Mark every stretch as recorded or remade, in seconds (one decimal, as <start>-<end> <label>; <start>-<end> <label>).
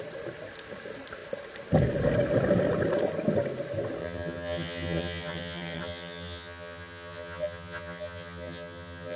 0.0-4.0 recorded; 4.0-9.2 remade